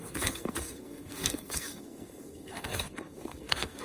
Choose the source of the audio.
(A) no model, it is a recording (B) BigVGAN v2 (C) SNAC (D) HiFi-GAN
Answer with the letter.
C